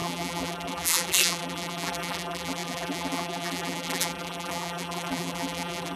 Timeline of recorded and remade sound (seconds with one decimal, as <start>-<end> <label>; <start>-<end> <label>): 0.0-6.0 remade